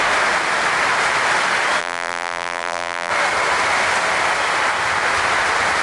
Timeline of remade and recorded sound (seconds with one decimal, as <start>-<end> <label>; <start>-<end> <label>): 0.0-1.8 recorded; 1.8-3.1 remade; 3.1-5.8 recorded